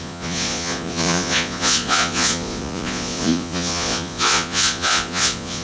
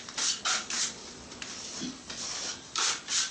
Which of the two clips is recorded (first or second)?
second